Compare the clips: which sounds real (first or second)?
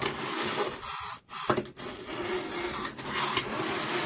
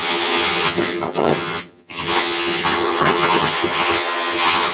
first